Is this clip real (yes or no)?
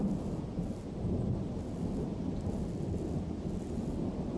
yes